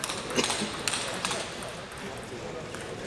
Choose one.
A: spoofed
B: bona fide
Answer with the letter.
B